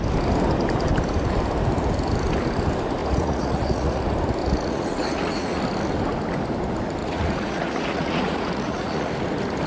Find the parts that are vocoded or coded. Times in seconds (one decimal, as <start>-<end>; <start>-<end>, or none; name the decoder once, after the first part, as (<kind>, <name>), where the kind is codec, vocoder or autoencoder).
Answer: 3.0-4.0 (vocoder, Vocos); 4.4-5.6; 7.0-9.1